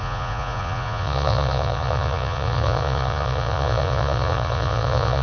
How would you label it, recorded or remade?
remade